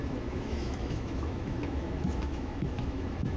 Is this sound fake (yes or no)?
yes